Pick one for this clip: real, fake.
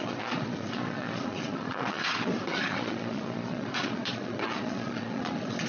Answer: fake